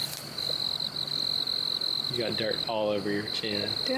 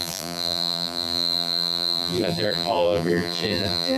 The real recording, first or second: first